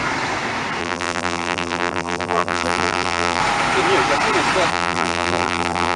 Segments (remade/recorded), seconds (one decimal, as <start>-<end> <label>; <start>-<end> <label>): 0.0-0.8 recorded; 0.8-3.4 remade; 3.4-4.7 recorded; 4.7-6.0 remade